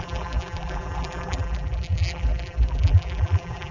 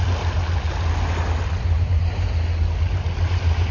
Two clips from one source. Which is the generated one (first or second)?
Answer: first